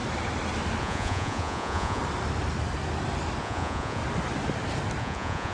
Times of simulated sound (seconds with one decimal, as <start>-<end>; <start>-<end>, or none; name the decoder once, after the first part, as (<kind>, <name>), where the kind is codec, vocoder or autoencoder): 0.8-2.0 (vocoder, Vocos); 3.4-4.0; 5.0-5.5